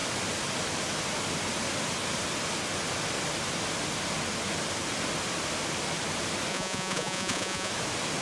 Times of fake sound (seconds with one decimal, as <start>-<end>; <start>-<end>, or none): 6.5-7.7